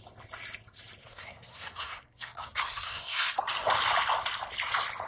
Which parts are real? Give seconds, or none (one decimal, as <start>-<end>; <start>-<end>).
0.0-1.0; 3.4-5.1